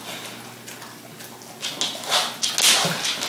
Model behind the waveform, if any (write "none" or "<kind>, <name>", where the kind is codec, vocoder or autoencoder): none